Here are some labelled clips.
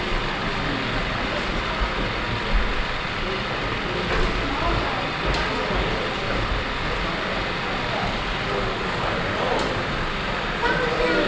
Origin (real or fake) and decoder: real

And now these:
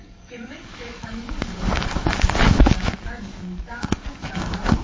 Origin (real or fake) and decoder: fake, codec, DAC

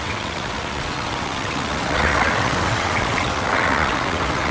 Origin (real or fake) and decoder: fake, vocoder, WaveNeXt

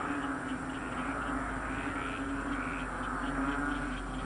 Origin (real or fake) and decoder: real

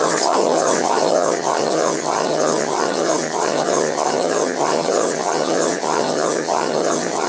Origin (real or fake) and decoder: fake, vocoder, HiFi-GAN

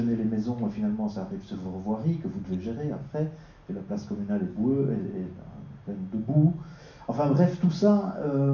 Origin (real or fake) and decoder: real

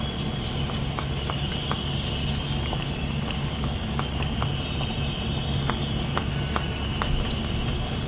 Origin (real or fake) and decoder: real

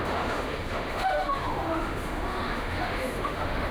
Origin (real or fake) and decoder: fake, autoencoder, DAC-VAE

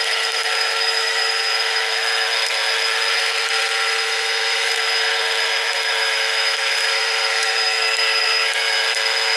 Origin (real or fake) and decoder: fake, codec, SNAC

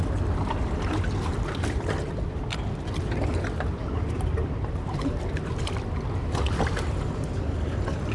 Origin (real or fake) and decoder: real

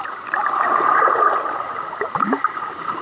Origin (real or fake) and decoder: real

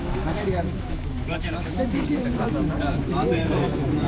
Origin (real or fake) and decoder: fake, autoencoder, DAC-VAE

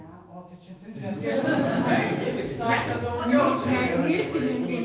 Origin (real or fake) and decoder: fake, autoencoder, DAC-VAE